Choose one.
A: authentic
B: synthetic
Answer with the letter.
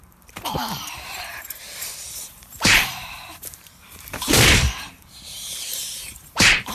B